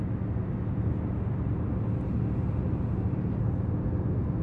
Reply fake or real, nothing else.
real